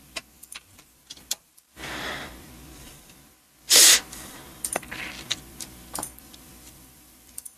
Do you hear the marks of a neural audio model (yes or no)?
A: yes